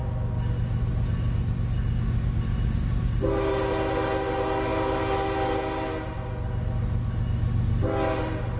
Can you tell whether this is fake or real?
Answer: real